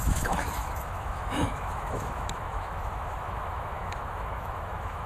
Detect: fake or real fake